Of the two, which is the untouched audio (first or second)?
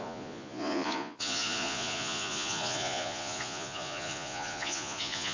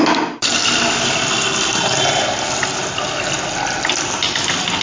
second